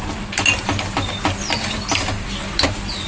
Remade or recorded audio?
recorded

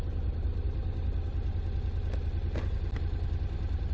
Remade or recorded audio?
recorded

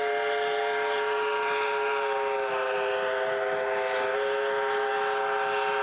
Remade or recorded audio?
recorded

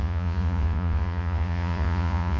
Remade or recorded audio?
remade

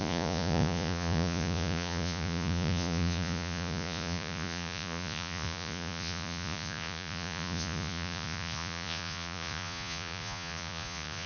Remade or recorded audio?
remade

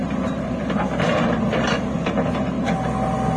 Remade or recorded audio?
recorded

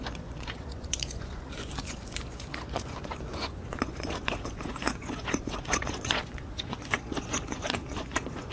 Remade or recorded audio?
remade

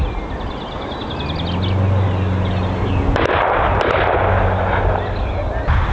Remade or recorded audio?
recorded